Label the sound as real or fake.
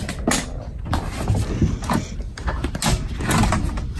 real